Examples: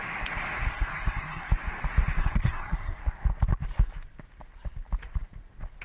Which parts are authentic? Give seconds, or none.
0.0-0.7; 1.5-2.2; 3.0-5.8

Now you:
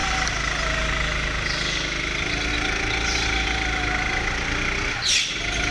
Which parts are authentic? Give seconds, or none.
0.0-5.7